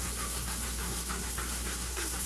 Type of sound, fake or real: fake